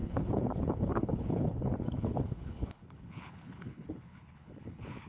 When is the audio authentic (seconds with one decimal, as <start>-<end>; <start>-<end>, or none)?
none